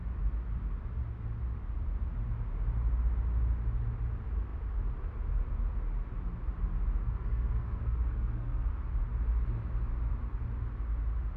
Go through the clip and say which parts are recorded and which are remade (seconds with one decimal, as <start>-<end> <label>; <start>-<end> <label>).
0.0-7.0 recorded; 7.0-8.7 remade; 8.7-11.4 recorded